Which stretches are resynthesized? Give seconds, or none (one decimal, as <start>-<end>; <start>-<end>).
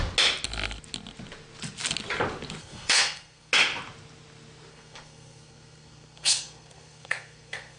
2.6-3.5; 4.7-7.8